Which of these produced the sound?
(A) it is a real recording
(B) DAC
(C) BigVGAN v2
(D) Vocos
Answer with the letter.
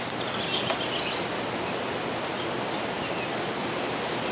A